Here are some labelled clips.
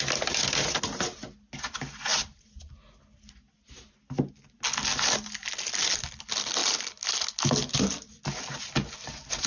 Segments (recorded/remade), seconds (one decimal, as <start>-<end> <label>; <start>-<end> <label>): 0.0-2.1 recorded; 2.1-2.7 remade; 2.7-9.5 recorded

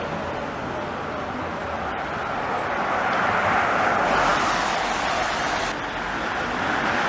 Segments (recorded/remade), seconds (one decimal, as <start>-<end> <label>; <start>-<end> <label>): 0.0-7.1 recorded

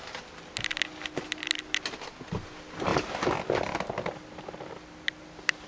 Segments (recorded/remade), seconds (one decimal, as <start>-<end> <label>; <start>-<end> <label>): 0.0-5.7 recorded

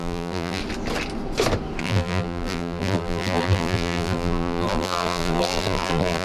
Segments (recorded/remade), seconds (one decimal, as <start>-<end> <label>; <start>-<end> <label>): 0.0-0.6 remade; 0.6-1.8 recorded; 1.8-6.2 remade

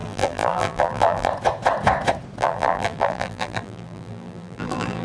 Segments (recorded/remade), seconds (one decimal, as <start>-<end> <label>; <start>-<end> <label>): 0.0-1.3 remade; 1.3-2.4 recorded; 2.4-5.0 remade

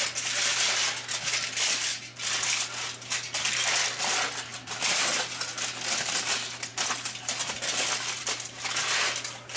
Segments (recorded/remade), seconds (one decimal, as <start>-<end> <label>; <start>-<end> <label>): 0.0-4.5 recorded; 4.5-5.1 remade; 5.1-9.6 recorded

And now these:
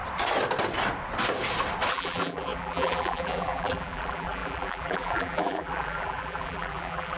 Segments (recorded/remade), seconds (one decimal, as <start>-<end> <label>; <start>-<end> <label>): 0.0-1.9 recorded; 1.9-7.2 remade